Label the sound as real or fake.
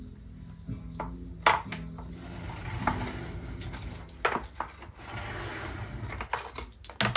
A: real